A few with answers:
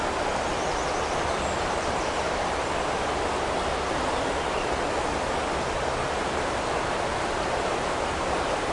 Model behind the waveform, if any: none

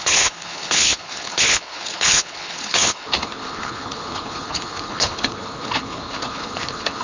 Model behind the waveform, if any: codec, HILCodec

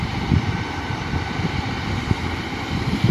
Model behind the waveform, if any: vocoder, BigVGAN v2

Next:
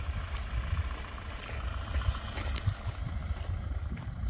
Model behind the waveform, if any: none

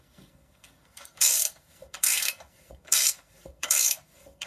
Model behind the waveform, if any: codec, SNAC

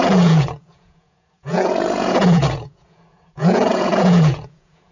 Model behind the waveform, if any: vocoder, Vocos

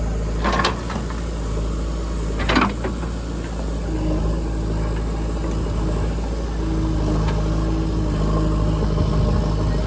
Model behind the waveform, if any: none